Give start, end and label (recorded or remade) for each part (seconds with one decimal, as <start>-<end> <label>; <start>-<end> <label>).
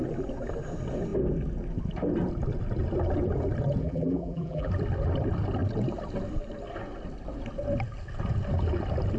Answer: 0.0-3.8 recorded; 3.8-4.7 remade; 4.7-9.2 recorded